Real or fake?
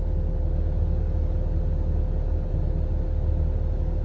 real